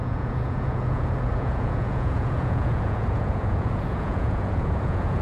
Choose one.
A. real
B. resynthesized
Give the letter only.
B